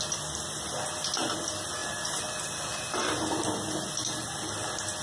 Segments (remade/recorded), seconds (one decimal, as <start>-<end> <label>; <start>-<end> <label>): 0.0-5.0 recorded